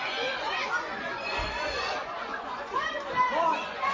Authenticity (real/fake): fake